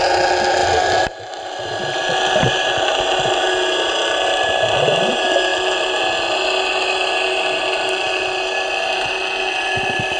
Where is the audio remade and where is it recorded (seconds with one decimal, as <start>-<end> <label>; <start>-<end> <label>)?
0.0-10.2 recorded